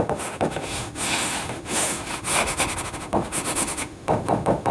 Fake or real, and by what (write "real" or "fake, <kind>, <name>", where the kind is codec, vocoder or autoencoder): fake, autoencoder, DAC-VAE